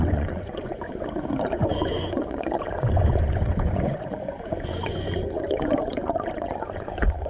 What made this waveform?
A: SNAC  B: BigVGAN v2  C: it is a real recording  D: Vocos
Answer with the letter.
D